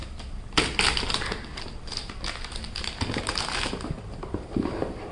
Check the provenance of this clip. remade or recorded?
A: recorded